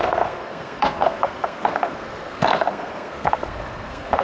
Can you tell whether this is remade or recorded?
remade